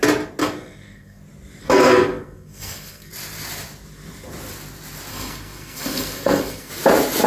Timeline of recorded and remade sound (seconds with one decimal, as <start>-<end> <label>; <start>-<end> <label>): 0.0-0.4 recorded; 0.4-1.2 remade; 1.2-1.6 recorded; 1.6-3.1 remade; 3.1-5.1 recorded; 5.1-6.7 remade; 6.7-7.3 recorded